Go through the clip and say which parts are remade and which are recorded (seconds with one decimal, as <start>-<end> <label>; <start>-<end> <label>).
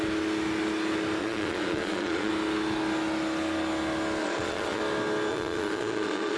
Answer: 0.0-1.2 recorded; 1.2-2.3 remade; 2.3-4.2 recorded; 4.2-4.8 remade; 4.8-5.3 recorded; 5.3-6.4 remade